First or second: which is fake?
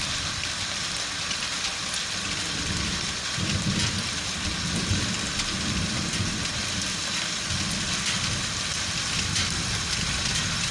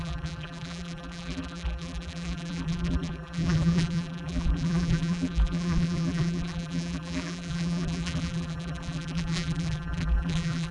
second